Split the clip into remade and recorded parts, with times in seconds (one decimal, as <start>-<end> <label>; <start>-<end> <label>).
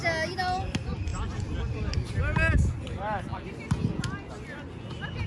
0.0-5.3 recorded